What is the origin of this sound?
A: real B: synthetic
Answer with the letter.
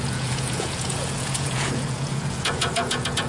B